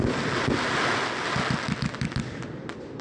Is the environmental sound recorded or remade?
recorded